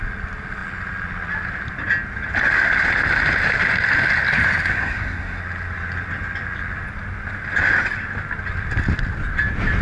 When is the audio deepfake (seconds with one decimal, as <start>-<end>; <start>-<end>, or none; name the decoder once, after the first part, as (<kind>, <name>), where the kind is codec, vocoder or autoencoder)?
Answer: 4.7-5.4 (codec, SNAC)